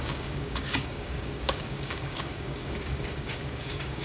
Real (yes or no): no